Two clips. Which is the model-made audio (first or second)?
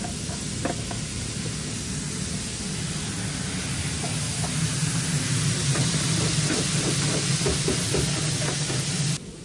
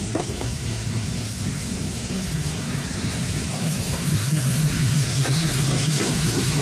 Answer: second